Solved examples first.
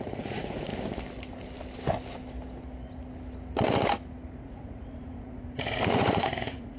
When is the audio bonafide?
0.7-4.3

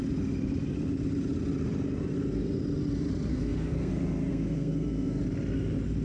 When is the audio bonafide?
0.0-3.3; 3.9-4.3; 5.2-6.0

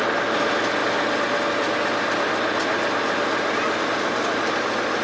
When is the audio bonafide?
0.0-5.0

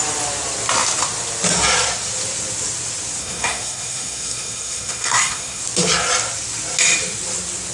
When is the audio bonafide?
0.0-3.2; 5.6-7.7

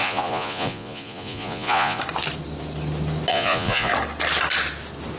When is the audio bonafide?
2.0-3.3; 3.9-5.2

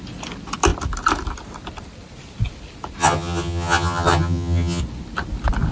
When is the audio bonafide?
0.0-3.0; 4.8-5.7

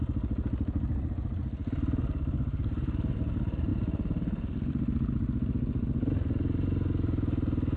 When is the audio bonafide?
0.0-7.8